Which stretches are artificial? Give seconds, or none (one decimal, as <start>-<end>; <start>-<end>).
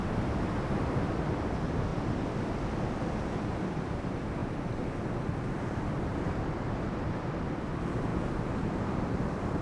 0.0-4.4; 5.1-8.1; 9.0-9.6